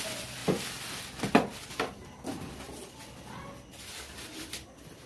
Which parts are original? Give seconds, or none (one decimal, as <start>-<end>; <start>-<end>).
0.0-5.1